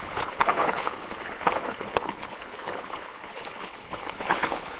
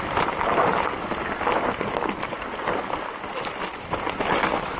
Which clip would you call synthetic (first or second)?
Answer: first